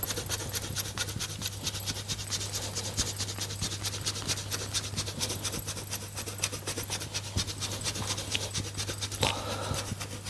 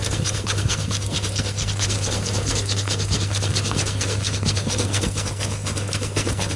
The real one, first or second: first